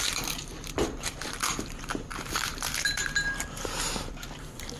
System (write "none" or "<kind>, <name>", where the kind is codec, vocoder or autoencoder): vocoder, BigVGAN v2